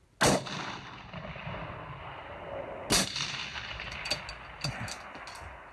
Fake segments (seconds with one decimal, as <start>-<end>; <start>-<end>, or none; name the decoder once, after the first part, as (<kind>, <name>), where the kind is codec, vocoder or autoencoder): none